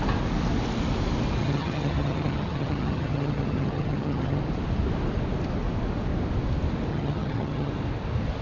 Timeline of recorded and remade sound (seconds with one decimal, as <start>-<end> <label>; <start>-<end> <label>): 0.0-1.4 recorded; 1.4-4.4 remade; 4.4-6.9 recorded; 6.9-7.7 remade; 7.7-8.4 recorded